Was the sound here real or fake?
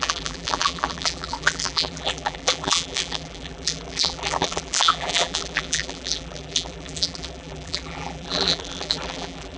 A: fake